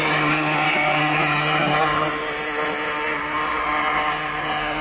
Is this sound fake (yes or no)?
no